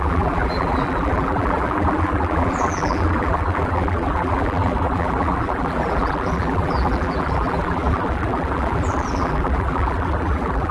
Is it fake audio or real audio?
fake